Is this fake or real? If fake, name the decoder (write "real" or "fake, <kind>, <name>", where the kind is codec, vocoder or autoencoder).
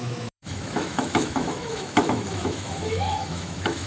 fake, autoencoder, DAC-VAE